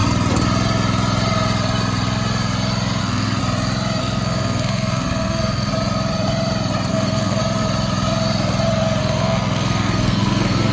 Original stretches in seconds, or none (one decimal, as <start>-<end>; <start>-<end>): 0.0-3.0; 3.4-4.0; 5.7-6.9; 7.4-9.0